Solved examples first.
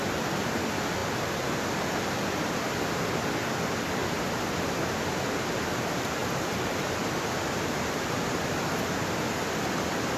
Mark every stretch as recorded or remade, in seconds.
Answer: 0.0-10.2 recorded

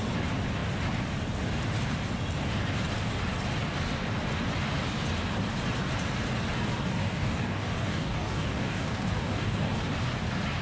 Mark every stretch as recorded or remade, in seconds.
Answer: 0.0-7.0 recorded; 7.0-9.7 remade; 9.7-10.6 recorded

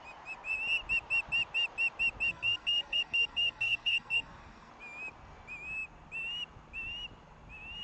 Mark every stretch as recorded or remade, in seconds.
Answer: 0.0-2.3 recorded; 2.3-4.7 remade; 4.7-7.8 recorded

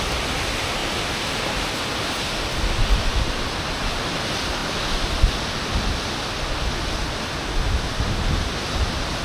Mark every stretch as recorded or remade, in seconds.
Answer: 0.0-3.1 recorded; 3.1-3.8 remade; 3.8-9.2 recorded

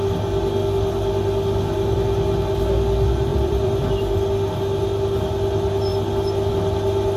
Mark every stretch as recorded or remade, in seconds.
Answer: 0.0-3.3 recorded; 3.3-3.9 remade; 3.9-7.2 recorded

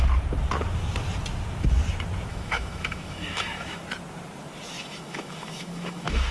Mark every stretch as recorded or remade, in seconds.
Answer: 0.0-2.3 recorded; 2.3-3.8 remade; 3.8-4.8 recorded; 4.8-6.3 remade

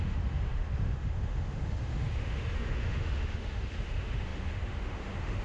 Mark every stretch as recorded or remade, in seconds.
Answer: 0.0-5.4 remade

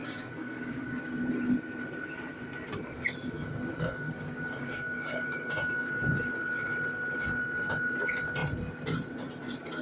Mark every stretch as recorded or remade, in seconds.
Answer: 0.0-1.1 remade; 1.1-3.2 recorded; 3.2-6.1 remade; 6.1-9.8 recorded